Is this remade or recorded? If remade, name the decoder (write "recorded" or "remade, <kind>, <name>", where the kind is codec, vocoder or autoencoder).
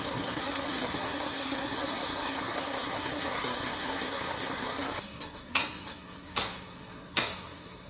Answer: remade, codec, SNAC